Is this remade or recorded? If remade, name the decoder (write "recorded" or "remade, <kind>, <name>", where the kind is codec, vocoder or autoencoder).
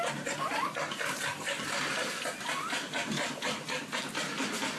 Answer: recorded